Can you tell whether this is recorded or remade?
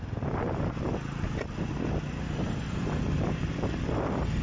recorded